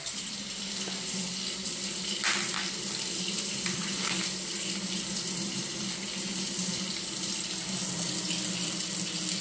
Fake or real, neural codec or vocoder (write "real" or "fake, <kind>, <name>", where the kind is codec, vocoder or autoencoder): real